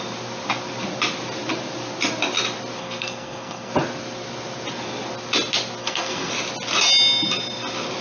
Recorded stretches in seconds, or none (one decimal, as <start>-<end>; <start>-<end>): 0.0-2.8; 3.7-5.8; 6.3-8.0